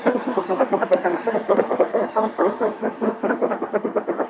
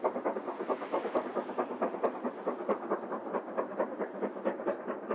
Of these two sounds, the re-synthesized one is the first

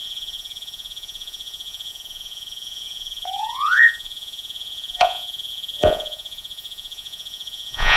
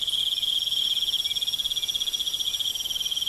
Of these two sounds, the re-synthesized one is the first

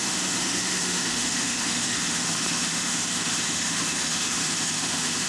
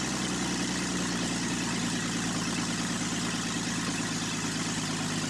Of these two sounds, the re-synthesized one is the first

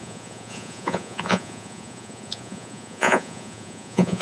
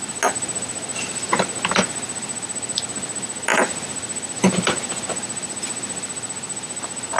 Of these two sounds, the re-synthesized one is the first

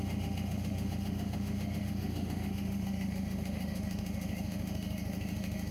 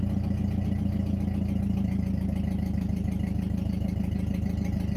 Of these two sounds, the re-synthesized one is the first